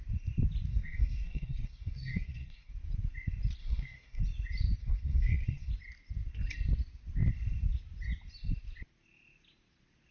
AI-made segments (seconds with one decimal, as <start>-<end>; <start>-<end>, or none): 0.7-2.7; 3.6-4.2; 4.8-5.7